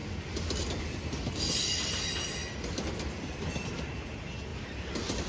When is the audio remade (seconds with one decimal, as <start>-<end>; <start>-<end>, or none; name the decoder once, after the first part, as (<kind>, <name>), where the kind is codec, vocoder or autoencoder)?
none